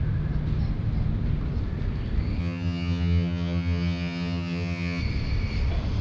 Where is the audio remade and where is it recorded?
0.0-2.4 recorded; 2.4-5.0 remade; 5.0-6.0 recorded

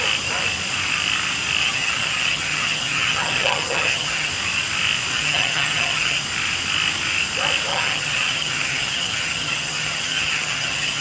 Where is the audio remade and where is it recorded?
0.0-1.6 recorded; 1.6-4.3 remade; 4.3-5.1 recorded; 5.1-6.2 remade; 6.2-7.7 recorded; 7.7-11.0 remade

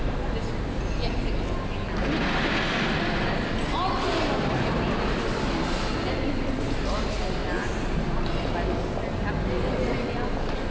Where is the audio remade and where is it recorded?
0.0-10.7 recorded

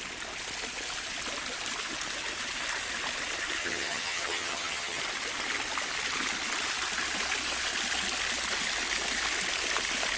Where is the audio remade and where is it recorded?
0.0-3.6 recorded; 3.6-5.0 remade; 5.0-10.2 recorded

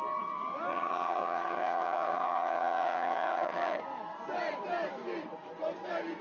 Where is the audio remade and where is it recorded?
0.0-0.7 recorded; 0.7-3.8 remade; 3.8-6.2 recorded